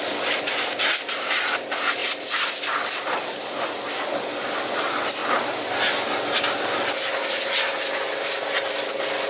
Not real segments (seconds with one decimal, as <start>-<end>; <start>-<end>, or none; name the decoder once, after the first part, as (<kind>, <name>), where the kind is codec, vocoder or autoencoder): none

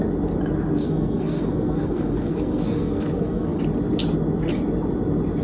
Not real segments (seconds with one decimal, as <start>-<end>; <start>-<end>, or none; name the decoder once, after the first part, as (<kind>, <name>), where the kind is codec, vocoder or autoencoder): 0.8-3.6 (codec, SNAC)

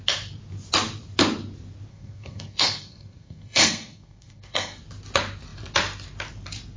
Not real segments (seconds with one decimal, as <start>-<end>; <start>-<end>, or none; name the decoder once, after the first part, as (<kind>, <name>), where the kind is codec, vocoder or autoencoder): 1.9-4.8 (codec, SNAC)

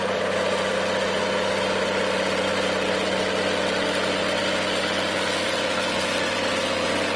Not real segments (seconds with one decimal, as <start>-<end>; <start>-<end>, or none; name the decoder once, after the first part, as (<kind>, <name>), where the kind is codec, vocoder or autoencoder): none

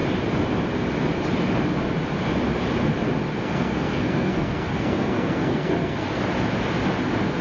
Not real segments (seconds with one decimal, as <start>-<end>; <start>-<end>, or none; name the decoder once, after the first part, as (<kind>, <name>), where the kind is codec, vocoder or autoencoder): 3.3-6.2 (codec, SNAC)

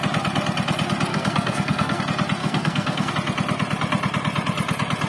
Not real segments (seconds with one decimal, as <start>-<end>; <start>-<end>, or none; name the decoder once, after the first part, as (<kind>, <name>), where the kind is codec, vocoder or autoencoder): 1.1-2.0 (codec, SNAC); 2.4-3.1

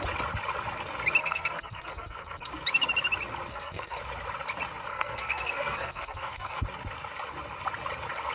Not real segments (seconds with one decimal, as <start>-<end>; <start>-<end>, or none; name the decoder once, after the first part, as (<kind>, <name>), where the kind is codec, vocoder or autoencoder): 1.2-2.5 (codec, SNAC); 3.5-4.0; 4.9-6.6